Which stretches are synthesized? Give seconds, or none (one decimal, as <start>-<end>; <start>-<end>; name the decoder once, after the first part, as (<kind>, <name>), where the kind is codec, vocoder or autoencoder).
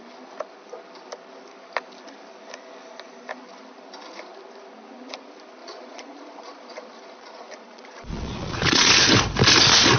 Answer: 5.6-8.9 (vocoder, Vocos)